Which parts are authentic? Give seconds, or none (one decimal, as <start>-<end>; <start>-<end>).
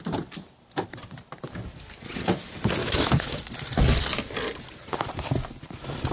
0.0-2.8; 3.5-6.1